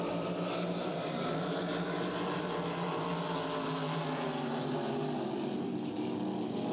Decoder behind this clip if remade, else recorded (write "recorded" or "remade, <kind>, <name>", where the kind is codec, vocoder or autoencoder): recorded